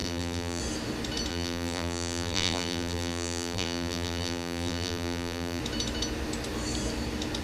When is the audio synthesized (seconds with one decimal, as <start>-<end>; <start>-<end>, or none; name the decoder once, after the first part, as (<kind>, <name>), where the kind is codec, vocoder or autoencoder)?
0.0-0.6 (vocoder, BigVGAN v2); 1.3-5.6